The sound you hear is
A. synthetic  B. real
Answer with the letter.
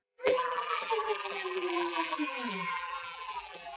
A